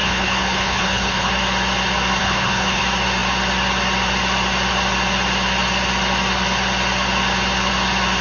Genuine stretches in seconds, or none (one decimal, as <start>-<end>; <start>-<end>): 1.3-2.2; 2.8-8.2